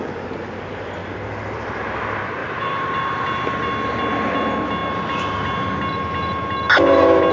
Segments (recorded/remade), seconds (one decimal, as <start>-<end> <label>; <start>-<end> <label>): 0.0-1.0 recorded; 1.0-1.8 remade; 1.8-2.4 recorded; 2.4-3.0 remade; 3.0-7.3 recorded